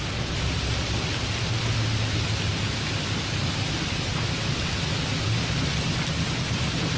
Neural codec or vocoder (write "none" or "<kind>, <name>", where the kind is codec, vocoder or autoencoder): none